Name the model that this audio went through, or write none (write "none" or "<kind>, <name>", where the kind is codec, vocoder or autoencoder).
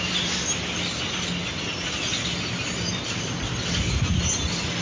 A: none